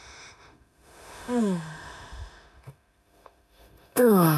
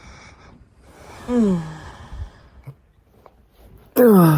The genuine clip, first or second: second